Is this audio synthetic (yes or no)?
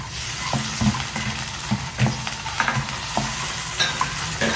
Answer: no